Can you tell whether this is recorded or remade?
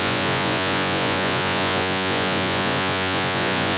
remade